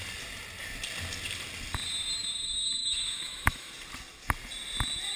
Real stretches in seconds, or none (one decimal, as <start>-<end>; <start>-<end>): 0.0-2.8; 3.7-5.2

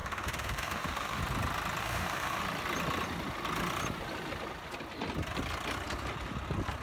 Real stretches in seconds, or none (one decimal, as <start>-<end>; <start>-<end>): 1.2-1.8; 2.4-6.8

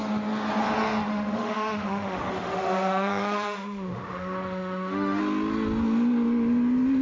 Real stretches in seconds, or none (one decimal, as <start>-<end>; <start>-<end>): 0.0-1.1; 5.2-7.0

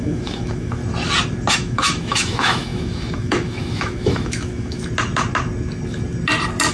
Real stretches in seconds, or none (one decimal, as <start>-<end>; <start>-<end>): 0.8-1.5; 4.8-6.7

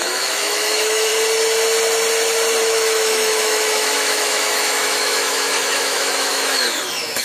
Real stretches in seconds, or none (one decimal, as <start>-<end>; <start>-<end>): 1.1-2.6

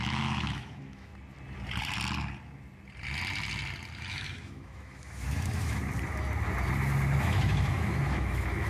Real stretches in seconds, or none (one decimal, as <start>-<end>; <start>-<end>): 1.1-4.1; 5.8-7.2

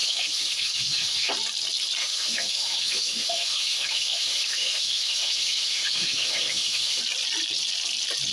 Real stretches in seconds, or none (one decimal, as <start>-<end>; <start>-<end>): 1.3-2.0; 7.0-8.3